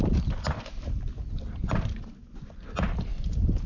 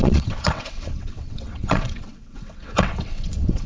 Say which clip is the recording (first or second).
first